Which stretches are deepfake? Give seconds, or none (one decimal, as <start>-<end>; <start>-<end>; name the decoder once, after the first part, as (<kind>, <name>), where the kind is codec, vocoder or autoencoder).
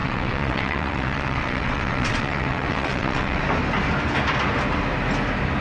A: 0.0-3.4 (vocoder, WaveNeXt)